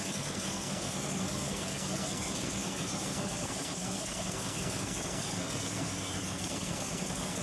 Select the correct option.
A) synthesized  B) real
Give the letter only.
A